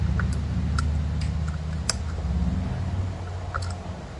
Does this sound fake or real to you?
real